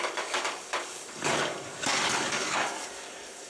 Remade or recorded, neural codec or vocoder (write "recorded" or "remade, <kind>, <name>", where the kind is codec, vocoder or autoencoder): remade, codec, DAC